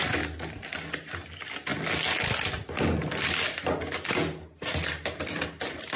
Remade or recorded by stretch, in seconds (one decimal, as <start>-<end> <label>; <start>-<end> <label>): 0.0-6.0 recorded